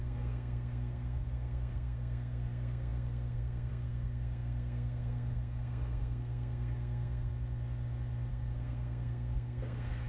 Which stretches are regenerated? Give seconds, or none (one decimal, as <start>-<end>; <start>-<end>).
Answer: 0.0-7.3; 8.3-10.1